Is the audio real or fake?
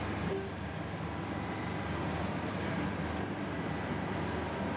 real